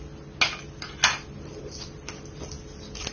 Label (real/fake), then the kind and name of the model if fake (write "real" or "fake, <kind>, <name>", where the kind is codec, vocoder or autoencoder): real